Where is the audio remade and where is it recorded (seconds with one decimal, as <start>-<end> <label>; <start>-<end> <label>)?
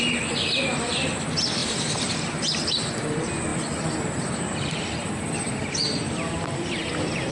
0.0-1.6 recorded; 1.6-2.1 remade; 2.1-3.5 recorded; 3.5-7.3 remade